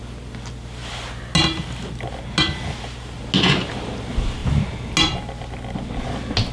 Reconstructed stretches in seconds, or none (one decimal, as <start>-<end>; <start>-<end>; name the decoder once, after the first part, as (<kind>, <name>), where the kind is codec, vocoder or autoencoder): none